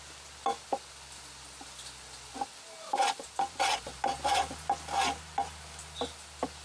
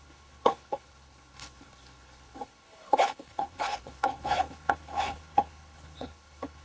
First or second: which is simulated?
second